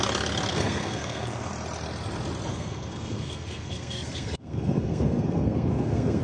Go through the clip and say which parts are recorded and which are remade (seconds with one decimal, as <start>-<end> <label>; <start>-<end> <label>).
0.0-0.5 recorded; 0.5-1.5 remade; 1.5-2.5 recorded; 2.5-6.2 remade